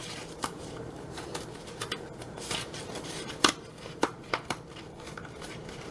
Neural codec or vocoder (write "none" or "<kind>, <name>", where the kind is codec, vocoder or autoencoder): vocoder, BigVGAN v2